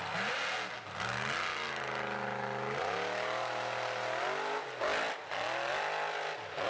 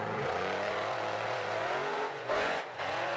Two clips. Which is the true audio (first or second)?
first